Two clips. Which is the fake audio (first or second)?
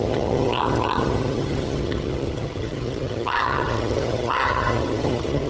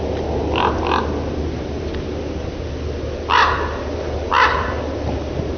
first